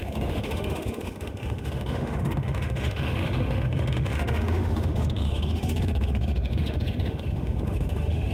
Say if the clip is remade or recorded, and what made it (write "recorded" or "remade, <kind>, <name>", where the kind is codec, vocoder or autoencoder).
remade, autoencoder, DAC-VAE